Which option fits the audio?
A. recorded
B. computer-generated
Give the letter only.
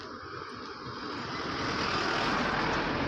A